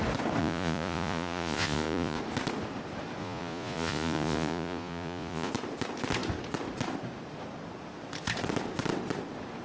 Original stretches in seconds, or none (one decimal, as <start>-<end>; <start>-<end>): 0.0-0.4; 2.2-3.2; 5.5-9.6